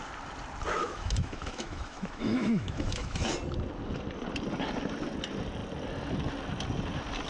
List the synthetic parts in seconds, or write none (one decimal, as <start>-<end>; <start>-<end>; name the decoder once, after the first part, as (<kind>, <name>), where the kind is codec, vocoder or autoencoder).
0.8-3.3 (autoencoder, DAC-VAE)